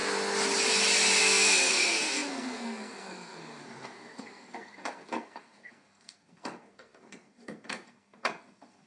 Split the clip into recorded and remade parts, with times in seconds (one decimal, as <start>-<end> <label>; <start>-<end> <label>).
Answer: 0.0-1.2 recorded; 1.2-8.9 remade